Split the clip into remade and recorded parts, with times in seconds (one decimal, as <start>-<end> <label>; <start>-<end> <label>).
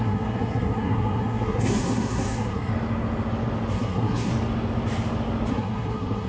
0.0-2.7 remade; 2.7-3.7 recorded; 3.7-4.3 remade; 4.3-5.5 recorded; 5.5-6.3 remade